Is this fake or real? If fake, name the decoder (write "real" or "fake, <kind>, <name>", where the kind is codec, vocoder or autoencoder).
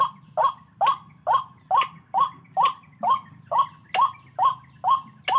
real